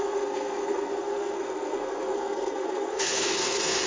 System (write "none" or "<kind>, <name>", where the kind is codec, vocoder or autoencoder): codec, SNAC